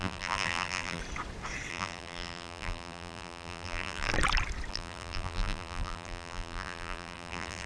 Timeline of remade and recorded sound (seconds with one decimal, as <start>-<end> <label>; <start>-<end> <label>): 0.0-1.0 remade; 1.0-1.7 recorded; 1.7-4.1 remade; 4.1-4.7 recorded; 4.7-7.7 remade